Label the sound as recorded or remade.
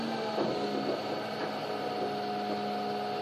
recorded